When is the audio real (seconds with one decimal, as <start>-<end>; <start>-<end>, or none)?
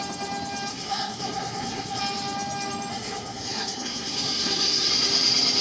0.0-0.7; 2.0-2.9; 4.9-5.6